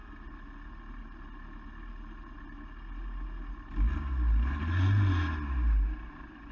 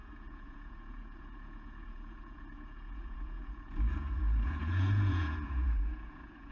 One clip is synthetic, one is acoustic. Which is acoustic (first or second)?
first